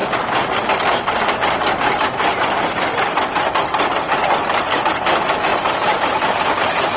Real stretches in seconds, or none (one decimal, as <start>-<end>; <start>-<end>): 0.0-2.3; 2.8-5.5